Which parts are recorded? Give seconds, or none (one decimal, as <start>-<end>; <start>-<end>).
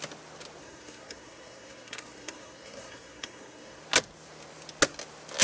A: 0.0-0.6; 3.8-5.4